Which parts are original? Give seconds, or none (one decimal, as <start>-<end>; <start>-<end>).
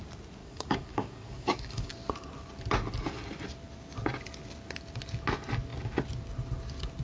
0.0-0.4; 1.9-7.0